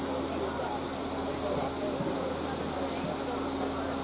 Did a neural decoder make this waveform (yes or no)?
no